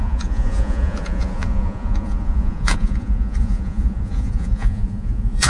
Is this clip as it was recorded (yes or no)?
no